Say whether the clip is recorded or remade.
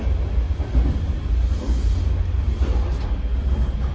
recorded